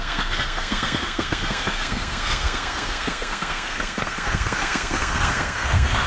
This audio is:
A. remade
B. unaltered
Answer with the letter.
A